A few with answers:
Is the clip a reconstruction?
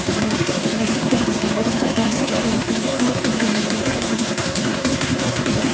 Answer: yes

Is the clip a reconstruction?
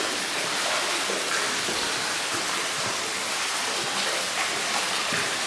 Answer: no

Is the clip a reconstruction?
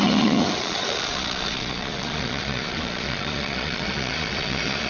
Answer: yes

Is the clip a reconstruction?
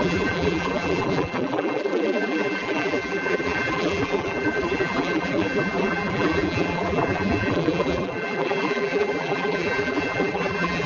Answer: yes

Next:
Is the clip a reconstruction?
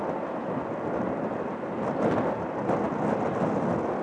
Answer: no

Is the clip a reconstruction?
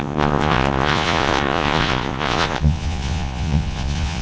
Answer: yes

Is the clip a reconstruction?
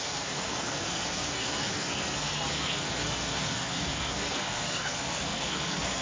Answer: yes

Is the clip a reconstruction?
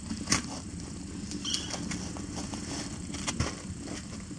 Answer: no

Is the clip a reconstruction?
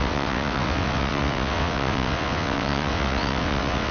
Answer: yes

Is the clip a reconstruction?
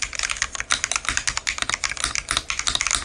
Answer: no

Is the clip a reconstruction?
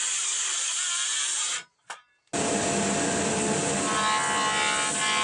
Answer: no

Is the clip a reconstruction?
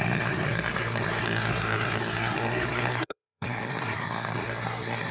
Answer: yes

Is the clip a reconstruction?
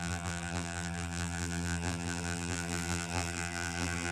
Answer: yes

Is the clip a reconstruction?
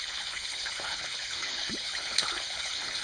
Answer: yes